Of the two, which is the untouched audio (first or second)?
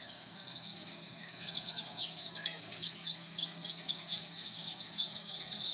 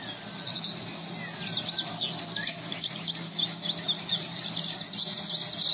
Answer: second